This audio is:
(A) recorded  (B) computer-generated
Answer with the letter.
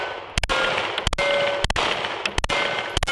A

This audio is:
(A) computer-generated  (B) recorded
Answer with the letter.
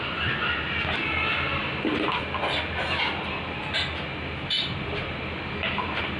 B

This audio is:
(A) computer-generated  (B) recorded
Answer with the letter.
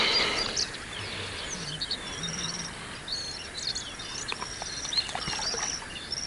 B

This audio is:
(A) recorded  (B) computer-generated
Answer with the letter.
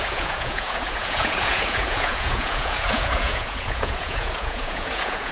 B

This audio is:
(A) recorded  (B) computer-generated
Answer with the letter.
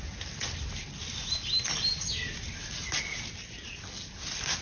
A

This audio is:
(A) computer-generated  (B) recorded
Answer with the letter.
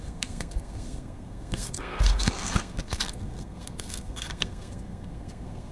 A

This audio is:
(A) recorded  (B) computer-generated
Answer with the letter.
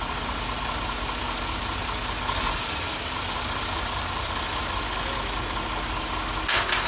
A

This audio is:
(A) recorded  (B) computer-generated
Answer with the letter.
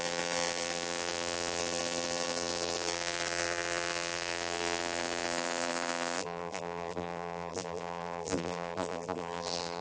B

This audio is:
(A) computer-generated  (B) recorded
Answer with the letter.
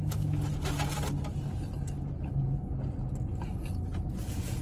B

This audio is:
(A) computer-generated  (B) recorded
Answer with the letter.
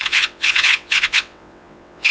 A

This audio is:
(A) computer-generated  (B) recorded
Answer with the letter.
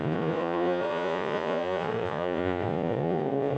A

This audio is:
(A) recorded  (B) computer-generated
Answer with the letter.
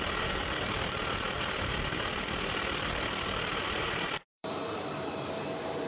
B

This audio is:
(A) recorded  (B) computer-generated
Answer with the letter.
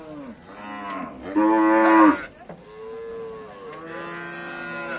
A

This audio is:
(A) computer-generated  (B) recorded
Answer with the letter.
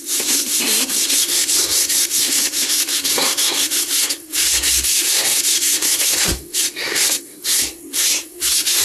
A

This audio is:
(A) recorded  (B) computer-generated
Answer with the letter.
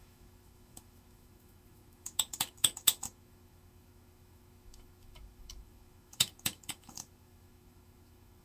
B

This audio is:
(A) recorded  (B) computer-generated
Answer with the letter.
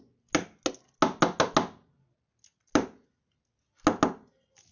A